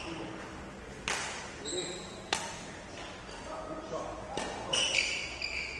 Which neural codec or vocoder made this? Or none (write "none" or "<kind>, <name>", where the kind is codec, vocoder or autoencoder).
none